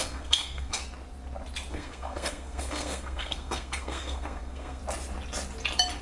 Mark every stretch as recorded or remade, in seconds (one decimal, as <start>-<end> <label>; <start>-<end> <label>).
0.0-0.8 remade; 0.8-1.7 recorded; 1.7-4.8 remade; 4.8-6.0 recorded